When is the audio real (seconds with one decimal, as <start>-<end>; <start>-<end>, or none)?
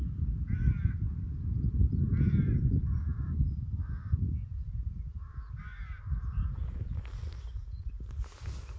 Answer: 0.0-7.2; 7.9-8.8